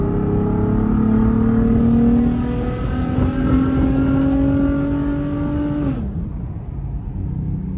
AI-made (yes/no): no